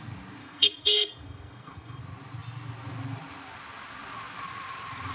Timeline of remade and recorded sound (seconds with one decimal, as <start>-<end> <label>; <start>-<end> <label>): 0.0-0.4 recorded; 0.4-2.0 remade; 2.0-5.1 recorded